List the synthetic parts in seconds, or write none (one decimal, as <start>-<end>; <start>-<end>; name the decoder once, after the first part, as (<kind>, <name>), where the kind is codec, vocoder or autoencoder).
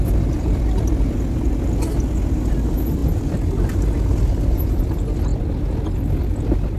none